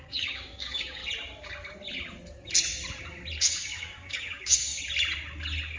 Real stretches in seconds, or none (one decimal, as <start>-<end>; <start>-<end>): 1.0-3.4; 4.7-5.8